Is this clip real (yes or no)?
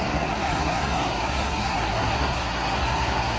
no